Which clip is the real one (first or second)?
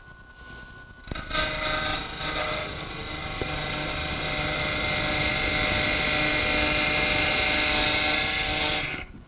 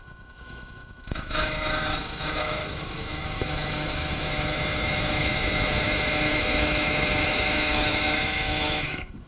first